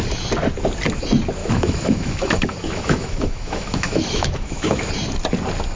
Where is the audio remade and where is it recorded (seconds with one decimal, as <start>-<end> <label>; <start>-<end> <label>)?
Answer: 0.0-1.4 recorded; 1.4-4.9 remade; 4.9-5.8 recorded